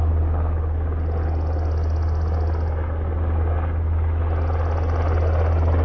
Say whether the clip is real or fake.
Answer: real